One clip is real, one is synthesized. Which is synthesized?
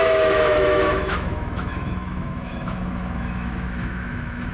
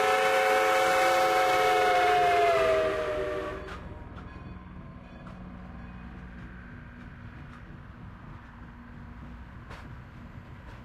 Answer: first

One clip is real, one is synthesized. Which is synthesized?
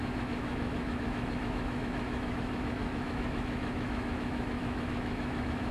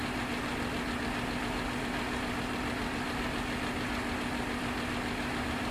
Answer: first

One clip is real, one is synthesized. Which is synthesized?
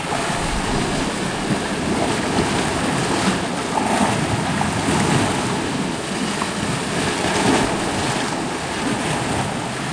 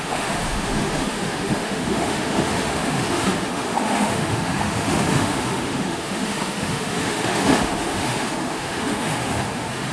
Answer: second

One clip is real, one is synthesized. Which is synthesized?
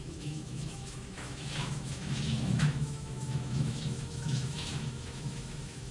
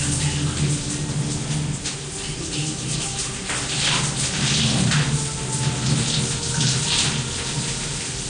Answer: first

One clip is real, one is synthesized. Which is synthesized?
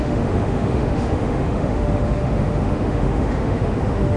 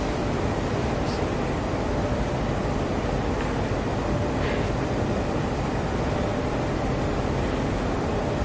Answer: first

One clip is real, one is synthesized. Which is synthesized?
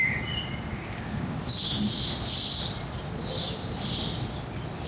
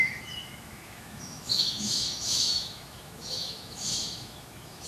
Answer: second